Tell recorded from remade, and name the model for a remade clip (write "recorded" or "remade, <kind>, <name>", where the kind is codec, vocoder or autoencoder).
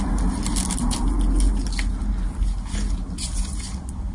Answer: recorded